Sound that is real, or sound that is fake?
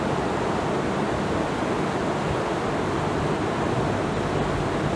real